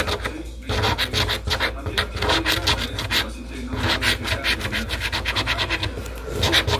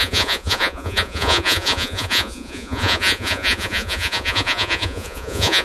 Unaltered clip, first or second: first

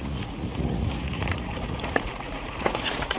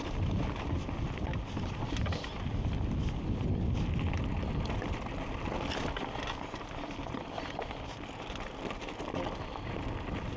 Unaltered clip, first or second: second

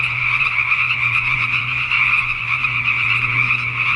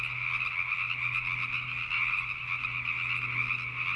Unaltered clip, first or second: second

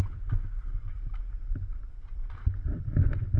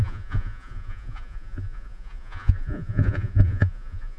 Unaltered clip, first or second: first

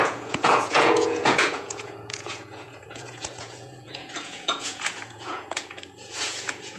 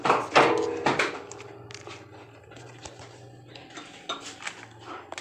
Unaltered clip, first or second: second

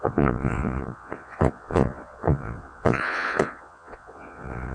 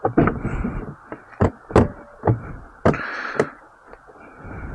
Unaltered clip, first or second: second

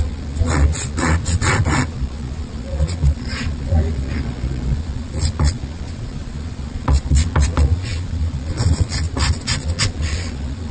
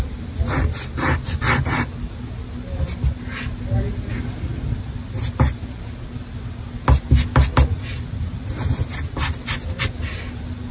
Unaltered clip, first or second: second